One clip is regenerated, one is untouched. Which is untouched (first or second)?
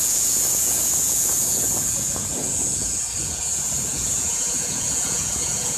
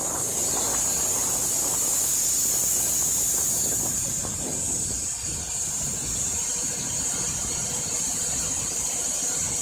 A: second